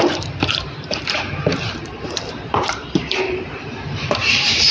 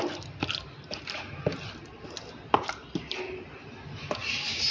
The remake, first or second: first